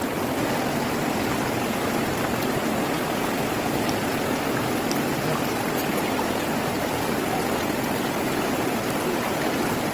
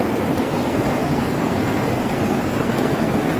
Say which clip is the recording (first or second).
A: first